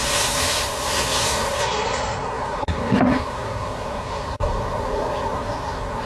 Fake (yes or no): yes